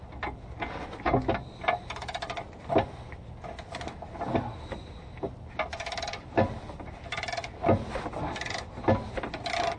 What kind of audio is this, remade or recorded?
recorded